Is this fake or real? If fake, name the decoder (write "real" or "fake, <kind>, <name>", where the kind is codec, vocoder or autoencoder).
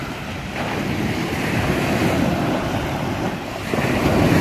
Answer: real